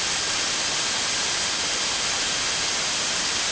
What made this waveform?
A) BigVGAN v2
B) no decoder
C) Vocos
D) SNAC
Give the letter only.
B